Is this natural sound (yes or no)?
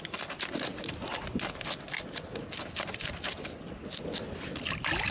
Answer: yes